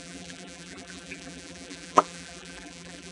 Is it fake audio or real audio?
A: fake